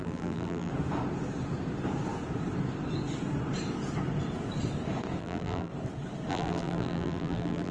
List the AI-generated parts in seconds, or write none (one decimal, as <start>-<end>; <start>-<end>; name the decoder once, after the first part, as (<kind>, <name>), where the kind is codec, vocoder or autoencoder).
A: 0.0-0.7 (vocoder, BigVGAN v2); 5.2-5.7; 6.3-7.7